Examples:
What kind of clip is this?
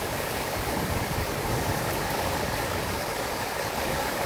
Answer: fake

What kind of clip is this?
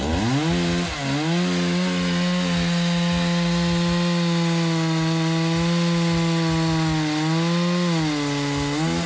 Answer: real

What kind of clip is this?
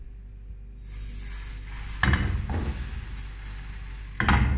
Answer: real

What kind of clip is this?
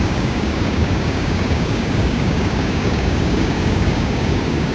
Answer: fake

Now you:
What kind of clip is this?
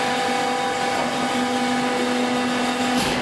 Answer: real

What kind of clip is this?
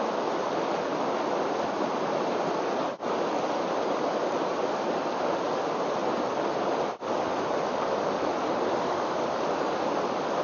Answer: real